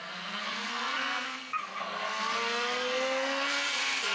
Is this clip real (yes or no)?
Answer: no